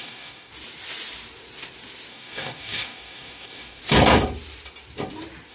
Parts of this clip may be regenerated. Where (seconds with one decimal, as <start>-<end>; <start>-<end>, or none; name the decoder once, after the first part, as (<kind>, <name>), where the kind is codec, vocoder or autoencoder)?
0.0-0.5 (codec, DAC); 2.1-3.8

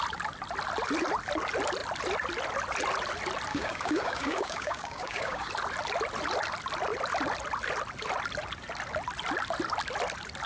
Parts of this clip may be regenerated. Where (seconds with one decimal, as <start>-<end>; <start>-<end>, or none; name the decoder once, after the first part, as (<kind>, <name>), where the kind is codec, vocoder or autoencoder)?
3.5-5.5 (codec, DAC)

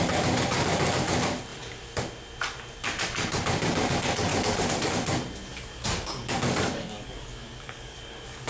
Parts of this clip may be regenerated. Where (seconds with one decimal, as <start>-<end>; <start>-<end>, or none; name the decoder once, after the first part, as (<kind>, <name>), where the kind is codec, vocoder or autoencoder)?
4.3-4.9 (codec, DAC); 5.5-8.5